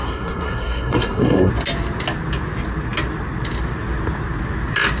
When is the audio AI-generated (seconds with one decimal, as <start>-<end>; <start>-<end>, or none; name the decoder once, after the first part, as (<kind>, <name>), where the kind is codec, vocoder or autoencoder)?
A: 0.0-1.5 (codec, SNAC)